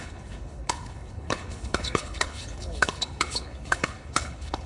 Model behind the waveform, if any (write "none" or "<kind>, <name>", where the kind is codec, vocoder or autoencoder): codec, HILCodec